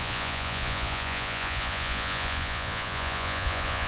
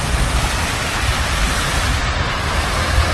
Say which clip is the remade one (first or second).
first